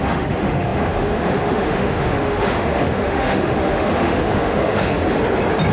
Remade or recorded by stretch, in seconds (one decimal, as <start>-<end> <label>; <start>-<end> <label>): 0.0-5.0 remade; 5.0-5.7 recorded